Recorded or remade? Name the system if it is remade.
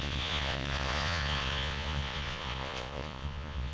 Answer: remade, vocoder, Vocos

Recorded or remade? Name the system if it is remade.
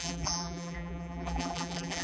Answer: remade, vocoder, BigVGAN v2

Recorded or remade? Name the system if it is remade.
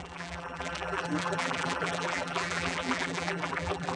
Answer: remade, vocoder, BigVGAN v2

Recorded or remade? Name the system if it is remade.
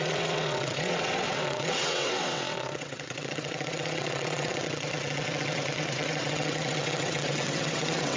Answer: remade, vocoder, WaveNeXt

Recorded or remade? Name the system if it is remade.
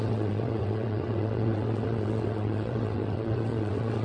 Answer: remade, vocoder, WaveNeXt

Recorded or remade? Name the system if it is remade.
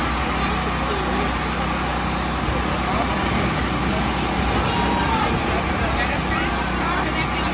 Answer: recorded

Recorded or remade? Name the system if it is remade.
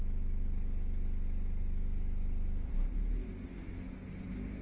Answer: recorded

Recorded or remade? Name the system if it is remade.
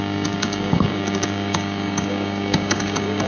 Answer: remade, codec, DAC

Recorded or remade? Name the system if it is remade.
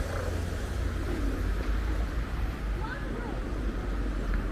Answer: recorded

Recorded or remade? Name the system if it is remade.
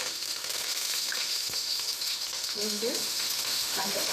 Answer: remade, autoencoder, DAC-VAE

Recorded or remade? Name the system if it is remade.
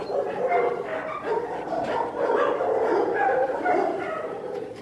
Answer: remade, vocoder, BigVGAN v2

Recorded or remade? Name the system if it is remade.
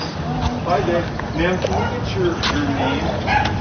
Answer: recorded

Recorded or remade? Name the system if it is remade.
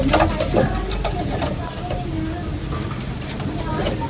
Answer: recorded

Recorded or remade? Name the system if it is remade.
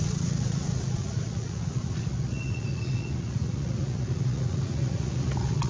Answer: remade, vocoder, Vocos